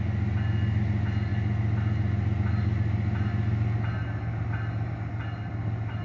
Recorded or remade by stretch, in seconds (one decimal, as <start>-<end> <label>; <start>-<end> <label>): 0.0-6.0 recorded